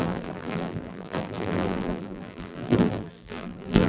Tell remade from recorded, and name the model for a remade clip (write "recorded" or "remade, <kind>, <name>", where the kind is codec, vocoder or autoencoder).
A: remade, vocoder, BigVGAN v2